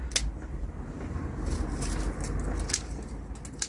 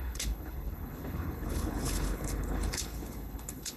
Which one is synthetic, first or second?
second